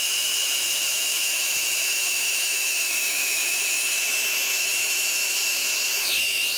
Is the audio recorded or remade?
remade